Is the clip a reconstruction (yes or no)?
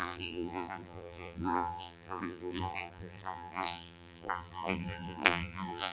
yes